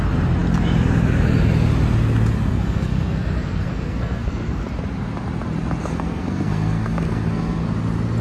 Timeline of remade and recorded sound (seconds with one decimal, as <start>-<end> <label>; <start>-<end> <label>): 0.0-2.5 recorded; 2.5-4.6 remade; 4.6-5.8 recorded; 5.8-7.6 remade; 7.6-8.2 recorded